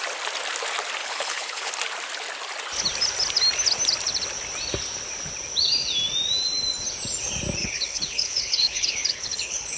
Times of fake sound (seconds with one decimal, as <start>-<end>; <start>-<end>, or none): 1.0-1.7; 7.6-9.8